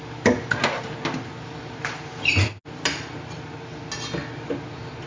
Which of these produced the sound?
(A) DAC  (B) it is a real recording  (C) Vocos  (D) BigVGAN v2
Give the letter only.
B